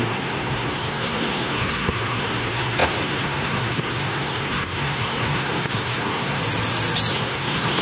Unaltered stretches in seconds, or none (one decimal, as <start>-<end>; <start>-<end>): 6.4-7.1